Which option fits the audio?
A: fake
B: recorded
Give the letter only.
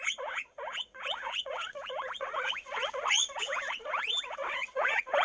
A